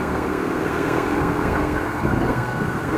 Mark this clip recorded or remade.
remade